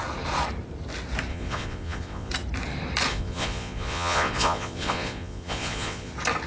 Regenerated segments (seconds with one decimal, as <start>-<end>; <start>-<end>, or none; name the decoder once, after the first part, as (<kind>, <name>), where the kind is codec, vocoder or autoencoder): 1.3-2.3 (vocoder, Vocos); 3.1-6.1